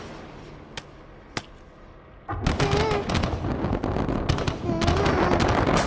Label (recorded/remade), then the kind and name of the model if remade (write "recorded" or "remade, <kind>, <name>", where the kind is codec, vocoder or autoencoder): recorded